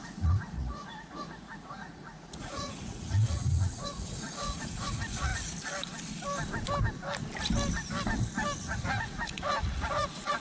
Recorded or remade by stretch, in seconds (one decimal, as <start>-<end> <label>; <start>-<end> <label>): 0.0-5.3 remade; 5.3-8.6 recorded; 8.6-10.4 remade